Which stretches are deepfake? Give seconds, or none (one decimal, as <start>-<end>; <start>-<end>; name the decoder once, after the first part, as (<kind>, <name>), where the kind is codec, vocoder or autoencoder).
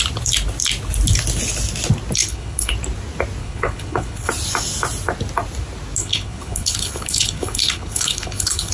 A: 2.2-2.7 (codec, HILCodec); 3.4-4.3; 6.0-8.7